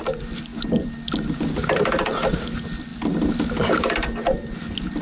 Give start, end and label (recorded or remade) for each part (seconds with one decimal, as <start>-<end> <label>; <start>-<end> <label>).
0.0-5.0 recorded